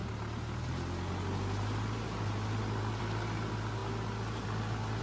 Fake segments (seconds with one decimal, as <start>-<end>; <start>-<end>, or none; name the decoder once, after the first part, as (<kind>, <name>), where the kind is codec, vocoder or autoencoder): none